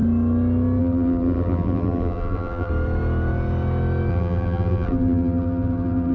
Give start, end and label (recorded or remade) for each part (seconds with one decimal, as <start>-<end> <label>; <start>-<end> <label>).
0.0-0.8 recorded; 0.8-2.7 remade; 2.7-4.1 recorded; 4.1-6.1 remade